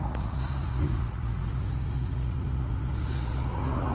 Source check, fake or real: fake